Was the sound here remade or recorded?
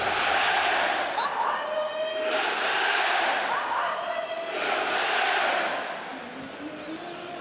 recorded